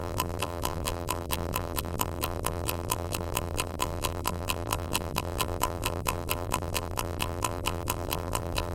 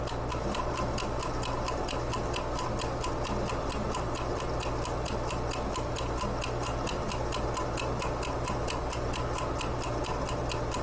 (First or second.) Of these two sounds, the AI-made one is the first